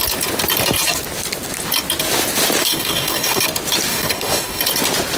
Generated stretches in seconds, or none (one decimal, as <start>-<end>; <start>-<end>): 2.6-3.4; 3.9-4.6